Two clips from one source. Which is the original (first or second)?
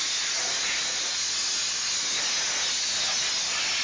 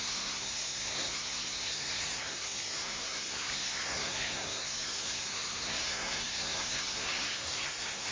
first